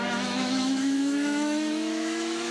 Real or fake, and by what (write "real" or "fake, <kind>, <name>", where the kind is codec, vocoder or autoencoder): fake, autoencoder, DAC-VAE